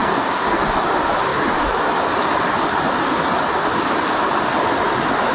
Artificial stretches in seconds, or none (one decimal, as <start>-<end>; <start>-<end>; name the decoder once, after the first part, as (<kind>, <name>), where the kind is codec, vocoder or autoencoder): 0.0-0.6 (codec, SNAC)